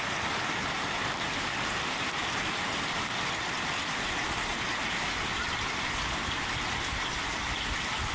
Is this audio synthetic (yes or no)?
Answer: no